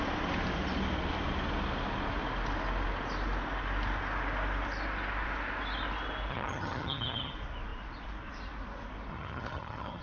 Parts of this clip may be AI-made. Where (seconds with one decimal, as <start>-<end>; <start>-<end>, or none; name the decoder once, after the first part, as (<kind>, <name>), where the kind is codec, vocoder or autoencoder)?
6.3-7.3 (vocoder, HiFi-GAN); 9.1-10.0

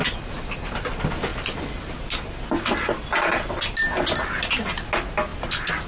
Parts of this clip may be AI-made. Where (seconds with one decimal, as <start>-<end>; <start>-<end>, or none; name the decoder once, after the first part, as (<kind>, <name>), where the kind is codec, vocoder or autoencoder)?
none

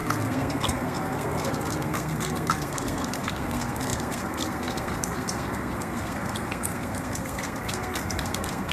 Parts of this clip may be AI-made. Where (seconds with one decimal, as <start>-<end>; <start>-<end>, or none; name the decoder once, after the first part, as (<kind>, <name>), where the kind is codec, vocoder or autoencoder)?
0.0-8.7 (codec, SNAC)

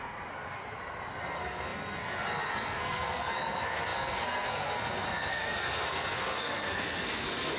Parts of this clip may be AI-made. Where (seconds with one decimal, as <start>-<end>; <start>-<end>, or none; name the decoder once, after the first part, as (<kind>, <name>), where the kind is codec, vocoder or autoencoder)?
0.0-0.6 (codec, SNAC); 1.2-7.6

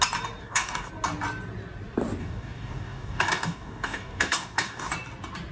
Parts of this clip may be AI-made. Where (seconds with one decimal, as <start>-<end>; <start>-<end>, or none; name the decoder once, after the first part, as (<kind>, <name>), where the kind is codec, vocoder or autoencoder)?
0.4-0.9 (codec, DAC); 2.2-4.9